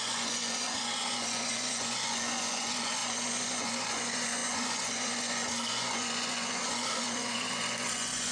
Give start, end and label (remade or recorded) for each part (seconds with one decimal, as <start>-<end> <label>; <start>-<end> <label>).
0.0-8.3 remade